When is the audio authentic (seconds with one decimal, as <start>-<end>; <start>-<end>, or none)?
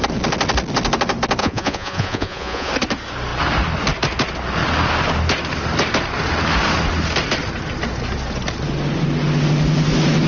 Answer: 0.0-1.4; 2.7-10.3